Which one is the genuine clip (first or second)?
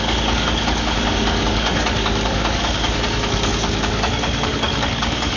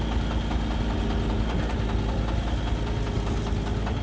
second